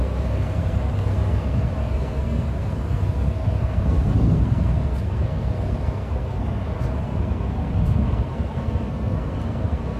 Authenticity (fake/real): fake